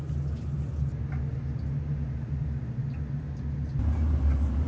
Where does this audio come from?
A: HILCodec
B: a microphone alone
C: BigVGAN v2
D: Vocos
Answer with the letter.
B